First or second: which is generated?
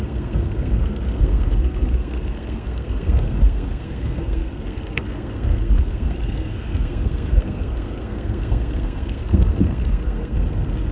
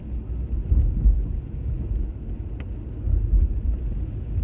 first